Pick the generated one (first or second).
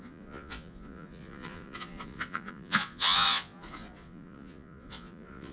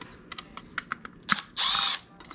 first